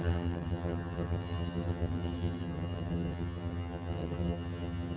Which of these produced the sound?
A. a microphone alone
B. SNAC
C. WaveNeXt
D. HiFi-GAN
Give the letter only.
D